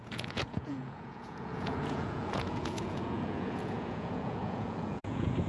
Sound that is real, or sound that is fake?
fake